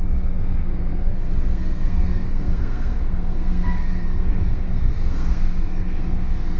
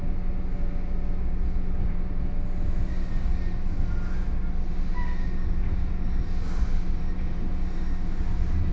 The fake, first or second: first